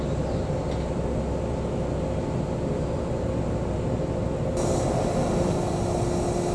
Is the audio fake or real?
real